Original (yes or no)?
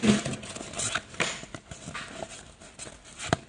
yes